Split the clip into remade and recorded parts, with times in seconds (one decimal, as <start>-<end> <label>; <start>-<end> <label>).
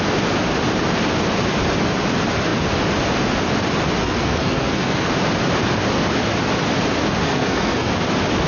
0.0-4.0 recorded; 4.0-5.1 remade; 5.1-7.2 recorded; 7.2-7.9 remade; 7.9-8.5 recorded